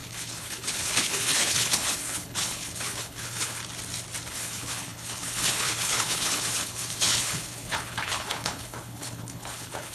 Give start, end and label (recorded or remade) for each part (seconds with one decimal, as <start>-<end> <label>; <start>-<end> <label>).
0.0-3.6 remade; 3.6-4.3 recorded; 4.3-9.9 remade